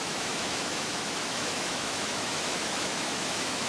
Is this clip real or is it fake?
fake